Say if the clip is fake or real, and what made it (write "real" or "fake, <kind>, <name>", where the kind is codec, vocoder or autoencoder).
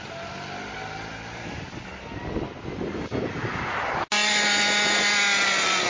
real